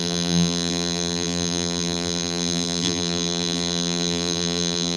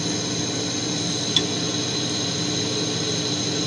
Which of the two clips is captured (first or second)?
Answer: second